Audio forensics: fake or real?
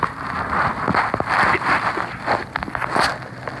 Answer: real